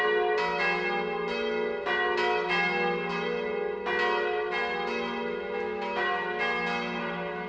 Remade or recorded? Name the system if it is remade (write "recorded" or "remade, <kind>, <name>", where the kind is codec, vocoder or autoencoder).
recorded